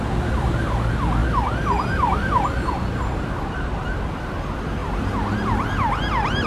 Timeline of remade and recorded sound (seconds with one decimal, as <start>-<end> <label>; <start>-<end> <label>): 0.0-6.5 recorded